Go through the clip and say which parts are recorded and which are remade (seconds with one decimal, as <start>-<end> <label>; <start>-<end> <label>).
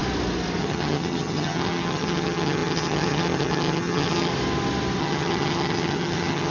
0.0-0.6 recorded; 0.6-4.3 remade; 4.3-5.0 recorded; 5.0-6.5 remade